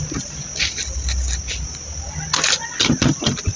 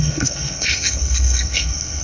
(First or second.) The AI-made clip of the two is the second